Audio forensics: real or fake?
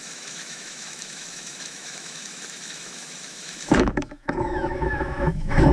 fake